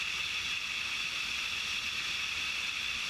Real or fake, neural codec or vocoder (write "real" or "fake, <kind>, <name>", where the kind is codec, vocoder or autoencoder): real